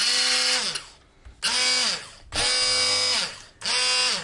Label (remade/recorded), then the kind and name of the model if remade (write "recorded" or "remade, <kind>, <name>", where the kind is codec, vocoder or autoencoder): recorded